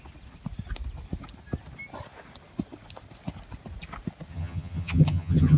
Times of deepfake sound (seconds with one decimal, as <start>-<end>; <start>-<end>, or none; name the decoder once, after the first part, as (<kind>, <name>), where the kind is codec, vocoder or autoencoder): 4.3-5.6 (vocoder, HiFi-GAN)